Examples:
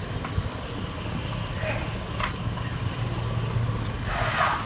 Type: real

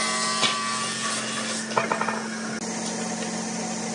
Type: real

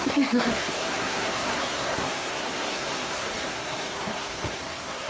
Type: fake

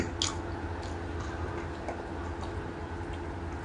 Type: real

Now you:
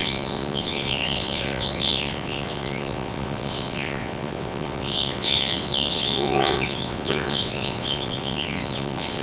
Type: fake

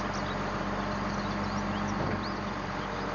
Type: real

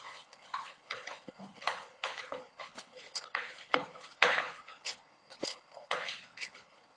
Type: fake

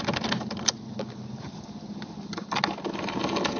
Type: real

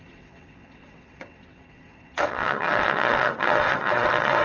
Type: fake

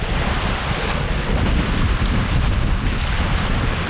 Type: real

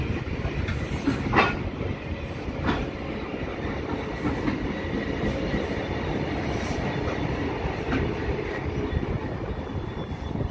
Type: real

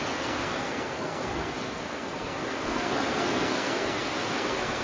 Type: fake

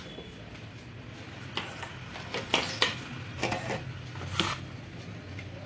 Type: real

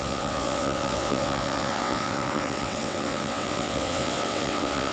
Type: fake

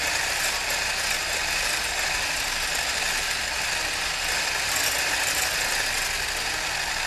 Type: real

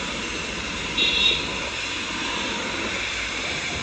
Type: fake